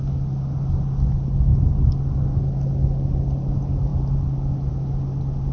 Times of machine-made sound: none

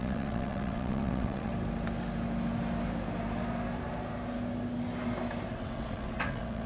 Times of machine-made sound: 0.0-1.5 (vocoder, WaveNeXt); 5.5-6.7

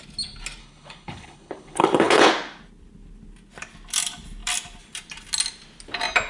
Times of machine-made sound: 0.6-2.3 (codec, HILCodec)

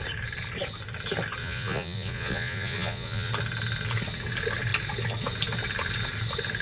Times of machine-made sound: 1.4-3.3 (vocoder, Vocos)

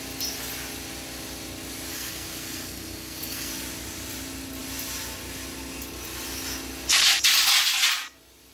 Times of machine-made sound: 1.9-3.5 (codec, SNAC)

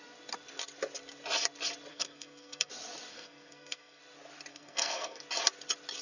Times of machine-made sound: 1.9-2.7 (codec, SNAC); 3.1-4.0; 4.5-5.2